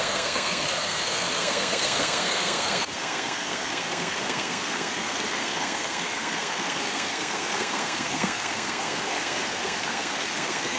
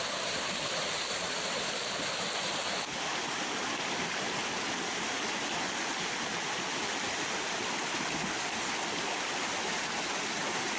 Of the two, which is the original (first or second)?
second